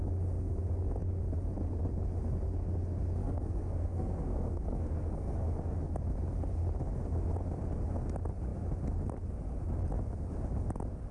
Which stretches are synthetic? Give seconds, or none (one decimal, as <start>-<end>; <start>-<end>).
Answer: 3.2-5.6